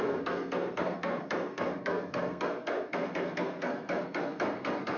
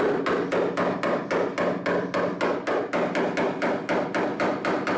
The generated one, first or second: first